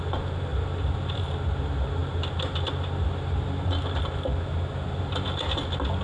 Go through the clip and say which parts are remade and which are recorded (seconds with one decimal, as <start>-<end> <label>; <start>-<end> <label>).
0.0-6.0 recorded